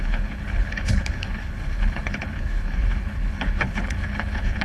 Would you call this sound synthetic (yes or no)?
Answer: yes